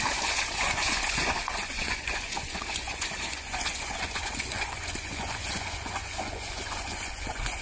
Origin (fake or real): fake